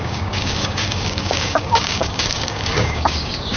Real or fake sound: fake